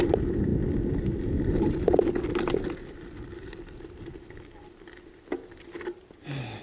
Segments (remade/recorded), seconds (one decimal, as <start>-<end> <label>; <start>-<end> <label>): 0.0-6.6 recorded